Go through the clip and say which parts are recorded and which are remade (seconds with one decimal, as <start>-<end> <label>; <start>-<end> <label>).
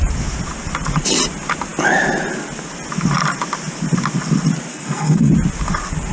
0.0-4.7 recorded; 4.7-5.3 remade; 5.3-6.1 recorded